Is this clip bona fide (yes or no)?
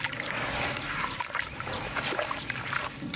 yes